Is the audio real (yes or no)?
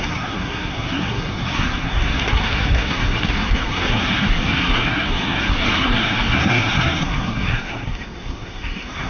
no